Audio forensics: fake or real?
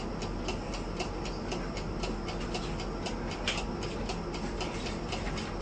real